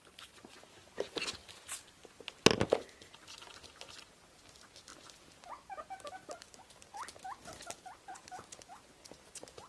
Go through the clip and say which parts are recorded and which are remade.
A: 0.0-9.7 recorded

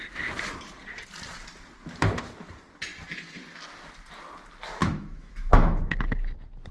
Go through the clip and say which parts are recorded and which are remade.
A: 0.0-4.8 recorded; 4.8-6.0 remade; 6.0-6.7 recorded

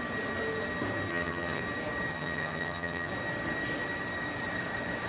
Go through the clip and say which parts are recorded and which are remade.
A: 0.0-1.1 recorded; 1.1-1.6 remade; 1.6-2.1 recorded; 2.1-3.1 remade; 3.1-5.1 recorded